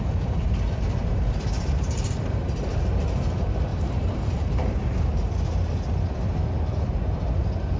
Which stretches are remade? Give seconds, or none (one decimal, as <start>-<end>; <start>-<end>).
1.0-2.1; 3.7-4.8